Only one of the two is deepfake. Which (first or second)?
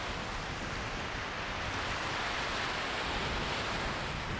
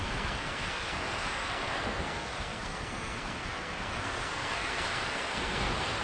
second